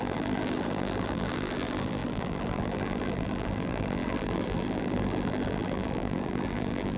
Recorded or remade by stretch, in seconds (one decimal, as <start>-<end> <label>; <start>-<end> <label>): 0.0-7.0 remade